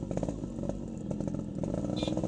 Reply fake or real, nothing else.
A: real